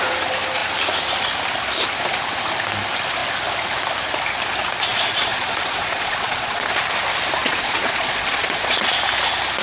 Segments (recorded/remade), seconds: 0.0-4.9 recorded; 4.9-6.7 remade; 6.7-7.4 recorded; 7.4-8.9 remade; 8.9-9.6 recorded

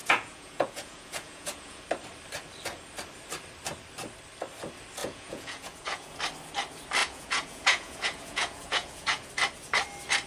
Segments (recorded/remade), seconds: 0.0-1.8 remade; 1.8-5.0 recorded; 5.0-6.2 remade; 6.2-7.0 recorded; 7.0-9.3 remade; 9.3-10.3 recorded